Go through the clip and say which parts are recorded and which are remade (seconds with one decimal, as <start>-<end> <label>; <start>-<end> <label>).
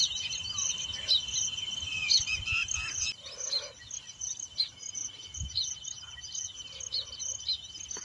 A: 0.0-8.0 recorded